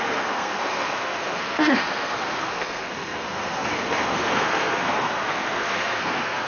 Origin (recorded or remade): remade